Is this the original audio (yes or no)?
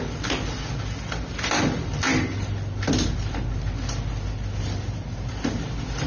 yes